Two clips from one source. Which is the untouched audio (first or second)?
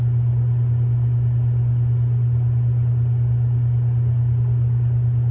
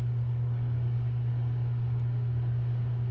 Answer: first